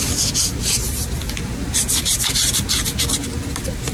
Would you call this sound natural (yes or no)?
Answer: yes